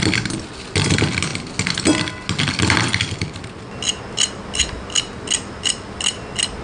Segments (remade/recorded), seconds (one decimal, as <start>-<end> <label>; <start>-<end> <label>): 0.0-6.6 recorded

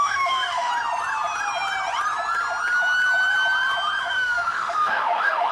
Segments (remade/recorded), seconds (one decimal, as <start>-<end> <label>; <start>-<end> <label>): 0.0-0.7 remade; 0.7-4.0 recorded; 4.0-5.5 remade

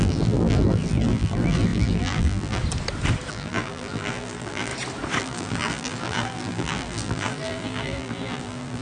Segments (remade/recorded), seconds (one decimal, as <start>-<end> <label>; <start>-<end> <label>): 0.0-2.6 remade; 2.6-3.3 recorded; 3.3-4.7 remade; 4.7-5.2 recorded; 5.2-8.8 remade

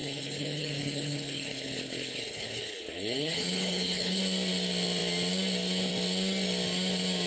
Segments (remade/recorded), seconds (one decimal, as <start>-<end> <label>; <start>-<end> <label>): 0.0-4.2 remade; 4.2-7.3 recorded